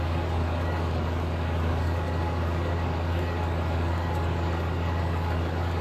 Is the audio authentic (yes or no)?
no